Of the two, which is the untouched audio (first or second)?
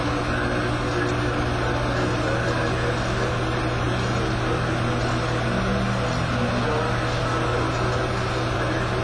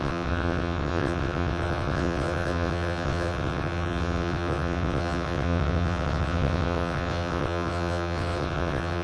first